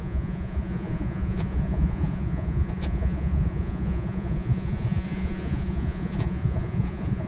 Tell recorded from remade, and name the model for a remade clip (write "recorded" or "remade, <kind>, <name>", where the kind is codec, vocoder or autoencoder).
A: remade, vocoder, Vocos